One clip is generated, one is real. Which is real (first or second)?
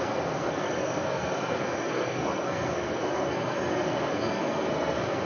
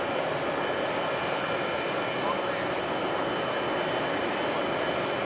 second